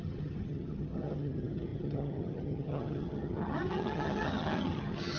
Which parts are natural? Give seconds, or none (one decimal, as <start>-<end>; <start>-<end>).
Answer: none